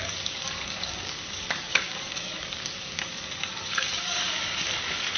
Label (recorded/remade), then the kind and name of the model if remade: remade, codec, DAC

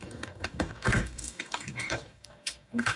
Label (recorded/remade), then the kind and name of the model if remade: remade, codec, DAC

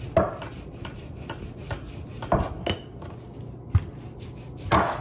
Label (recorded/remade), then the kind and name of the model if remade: recorded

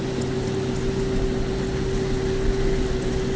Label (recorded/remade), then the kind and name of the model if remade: recorded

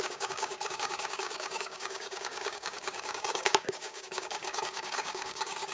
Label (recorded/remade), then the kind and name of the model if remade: remade, codec, DAC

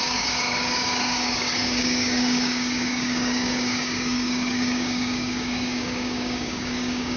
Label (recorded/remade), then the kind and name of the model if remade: remade, codec, DAC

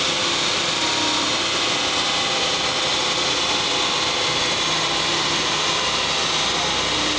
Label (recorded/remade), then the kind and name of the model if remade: recorded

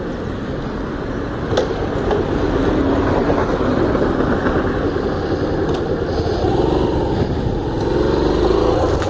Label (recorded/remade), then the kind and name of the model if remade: recorded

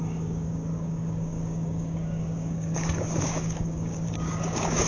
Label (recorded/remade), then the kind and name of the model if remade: remade, codec, DAC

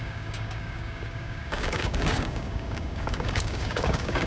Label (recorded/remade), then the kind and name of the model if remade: remade, codec, DAC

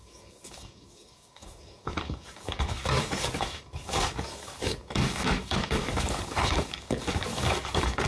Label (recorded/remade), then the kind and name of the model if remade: remade, codec, DAC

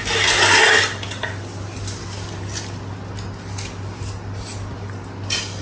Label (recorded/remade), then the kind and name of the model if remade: recorded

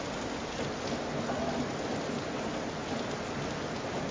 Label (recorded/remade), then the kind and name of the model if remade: recorded